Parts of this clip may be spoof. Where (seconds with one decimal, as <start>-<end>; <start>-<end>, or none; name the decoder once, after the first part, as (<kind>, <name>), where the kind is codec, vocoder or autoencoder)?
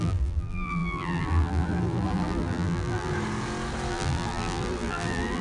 0.0-3.1 (vocoder, BigVGAN v2); 3.9-5.4